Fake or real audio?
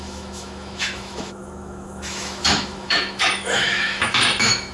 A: fake